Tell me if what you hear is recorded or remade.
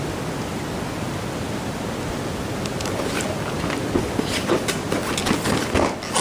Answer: recorded